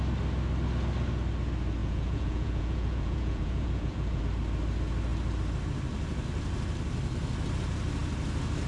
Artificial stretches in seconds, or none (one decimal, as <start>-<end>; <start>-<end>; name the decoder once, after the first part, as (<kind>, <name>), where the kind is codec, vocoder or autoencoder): 1.8-4.2 (vocoder, Vocos)